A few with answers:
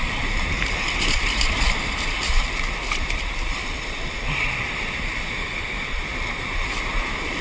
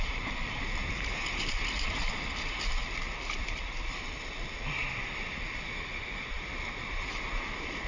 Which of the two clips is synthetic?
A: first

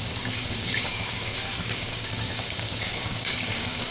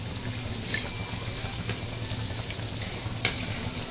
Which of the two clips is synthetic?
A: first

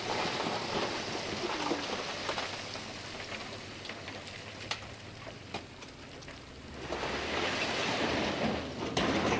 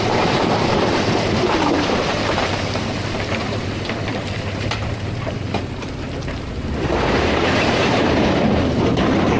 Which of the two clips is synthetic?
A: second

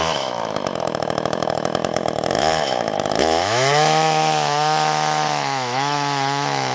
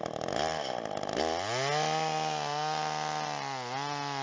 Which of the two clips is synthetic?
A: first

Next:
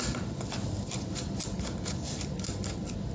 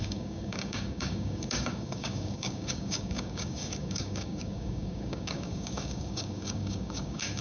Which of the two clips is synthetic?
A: second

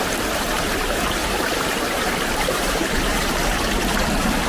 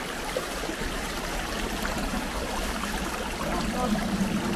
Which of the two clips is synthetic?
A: first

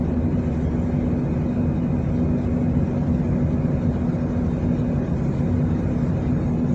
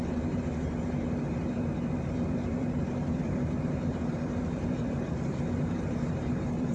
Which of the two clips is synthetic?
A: second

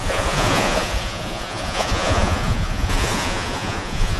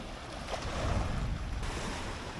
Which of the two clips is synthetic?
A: first